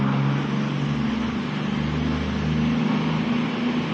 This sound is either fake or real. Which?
real